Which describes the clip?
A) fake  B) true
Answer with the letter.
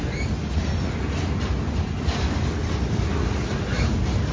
B